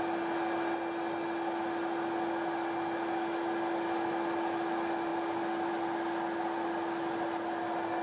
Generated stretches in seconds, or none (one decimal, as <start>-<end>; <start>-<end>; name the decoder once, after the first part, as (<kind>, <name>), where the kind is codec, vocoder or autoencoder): none